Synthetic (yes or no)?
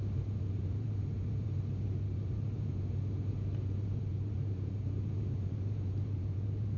yes